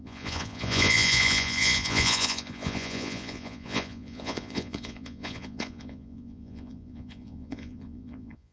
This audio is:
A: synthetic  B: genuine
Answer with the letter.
A